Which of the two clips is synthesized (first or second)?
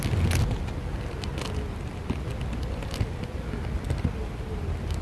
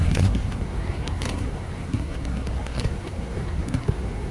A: second